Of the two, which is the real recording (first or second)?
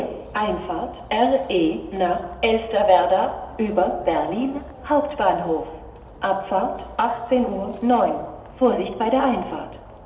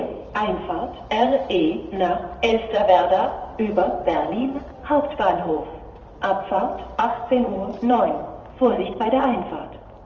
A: first